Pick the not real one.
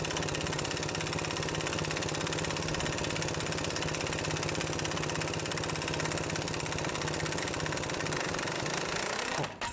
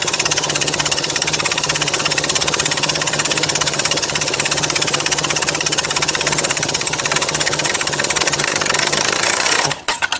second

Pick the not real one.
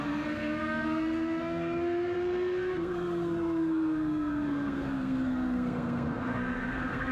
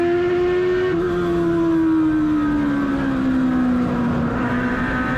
first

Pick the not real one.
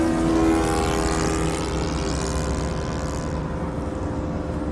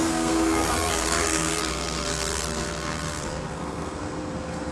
second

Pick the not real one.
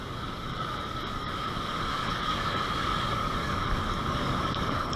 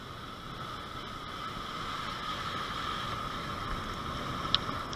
first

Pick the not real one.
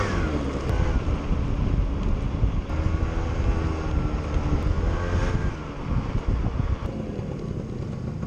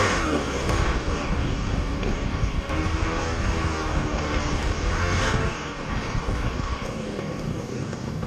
second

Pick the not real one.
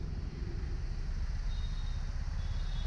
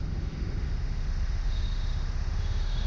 second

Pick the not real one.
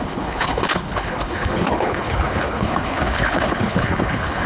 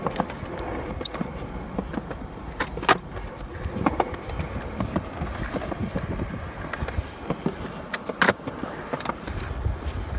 first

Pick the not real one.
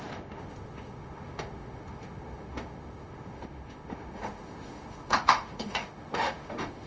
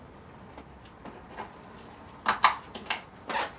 first